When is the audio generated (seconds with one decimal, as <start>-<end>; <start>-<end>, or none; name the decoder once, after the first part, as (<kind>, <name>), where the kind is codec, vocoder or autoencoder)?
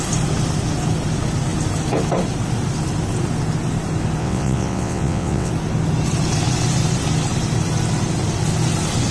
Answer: 4.2-5.5 (vocoder, WaveNeXt)